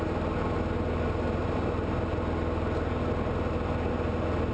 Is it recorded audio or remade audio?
recorded